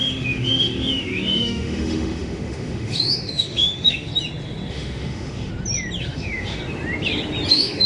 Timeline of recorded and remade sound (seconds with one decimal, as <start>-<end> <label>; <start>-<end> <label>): 0.0-4.1 remade; 4.1-4.7 recorded; 4.7-5.5 remade; 5.5-6.0 recorded; 6.0-6.6 remade; 6.6-7.5 recorded; 7.5-7.9 remade